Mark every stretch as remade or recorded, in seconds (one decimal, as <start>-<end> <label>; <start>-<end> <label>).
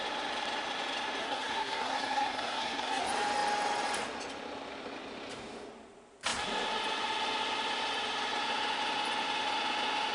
0.0-1.2 recorded; 1.2-3.0 remade; 3.0-10.1 recorded